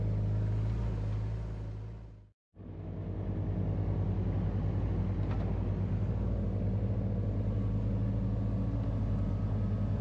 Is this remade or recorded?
recorded